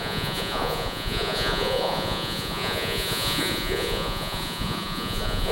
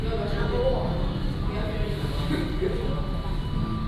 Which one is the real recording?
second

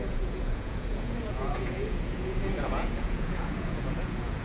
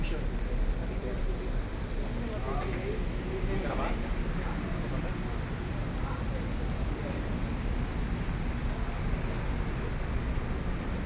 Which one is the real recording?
second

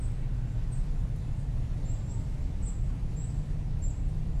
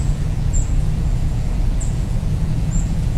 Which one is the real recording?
first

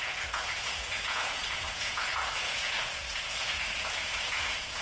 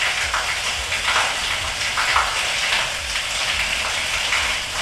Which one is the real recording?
second